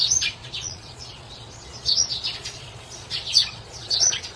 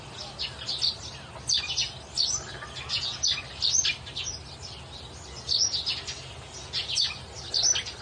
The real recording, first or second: second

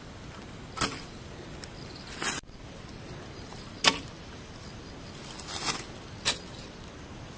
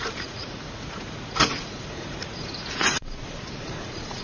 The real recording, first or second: first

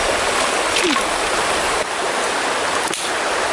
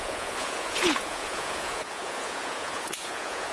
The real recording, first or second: first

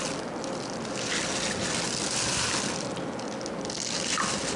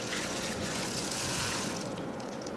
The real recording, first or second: first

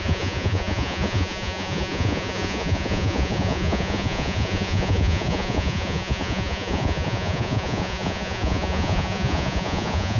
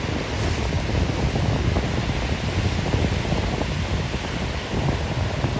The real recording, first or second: second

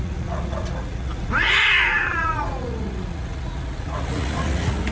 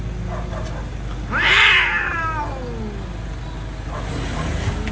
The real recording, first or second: second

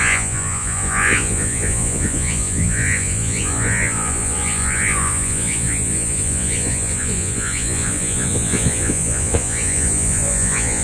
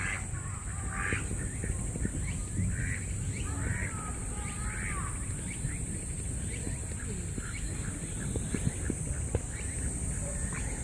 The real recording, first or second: second